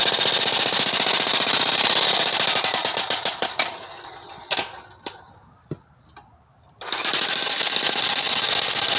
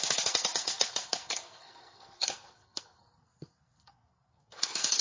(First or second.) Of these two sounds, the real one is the first